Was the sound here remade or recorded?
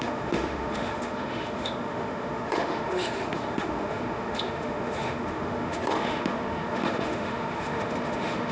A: remade